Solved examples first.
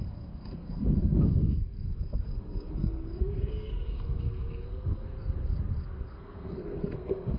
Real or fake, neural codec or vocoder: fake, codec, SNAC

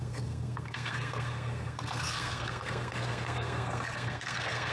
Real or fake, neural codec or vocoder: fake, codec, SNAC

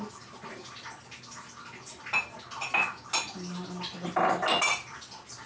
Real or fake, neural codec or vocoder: real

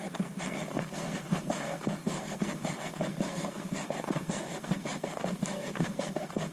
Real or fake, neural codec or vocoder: fake, codec, SNAC